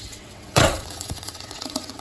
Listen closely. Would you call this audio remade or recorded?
remade